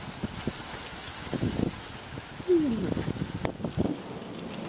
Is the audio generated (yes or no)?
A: no